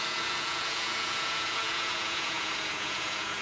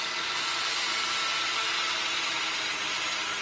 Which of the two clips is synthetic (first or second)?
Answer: first